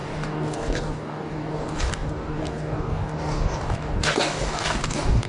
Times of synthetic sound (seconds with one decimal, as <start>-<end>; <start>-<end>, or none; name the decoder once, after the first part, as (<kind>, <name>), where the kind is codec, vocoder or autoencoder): 0.0-5.3 (codec, DAC)